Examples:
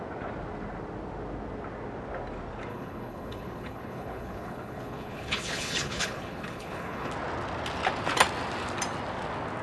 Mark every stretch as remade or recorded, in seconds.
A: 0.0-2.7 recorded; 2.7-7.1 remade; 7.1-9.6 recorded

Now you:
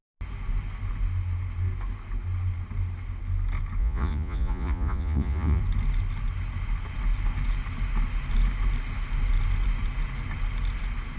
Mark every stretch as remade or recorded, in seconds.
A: 0.0-3.8 recorded; 3.8-5.6 remade; 5.6-11.2 recorded

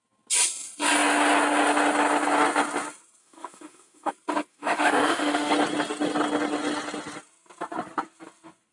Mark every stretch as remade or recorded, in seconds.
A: 0.0-3.2 recorded; 3.2-4.1 remade; 4.1-4.5 recorded; 4.5-5.5 remade; 5.5-8.7 recorded

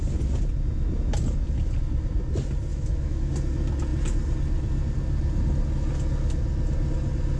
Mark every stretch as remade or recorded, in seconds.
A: 0.0-2.7 recorded; 2.7-3.3 remade; 3.3-7.4 recorded

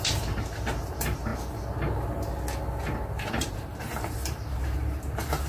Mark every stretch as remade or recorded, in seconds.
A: 0.0-1.3 remade; 1.3-3.3 recorded; 3.3-5.5 remade

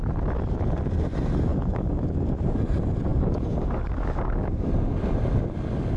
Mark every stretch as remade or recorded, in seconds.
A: 0.0-1.5 recorded; 1.5-2.6 remade; 2.6-3.1 recorded; 3.1-4.7 remade; 4.7-6.0 recorded

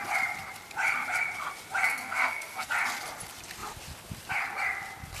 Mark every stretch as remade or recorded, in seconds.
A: 0.0-1.8 recorded; 1.8-2.7 remade; 2.7-5.2 recorded

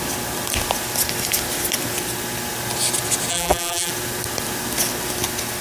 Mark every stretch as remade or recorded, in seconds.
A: 0.0-3.3 recorded; 3.3-3.9 remade; 3.9-5.6 recorded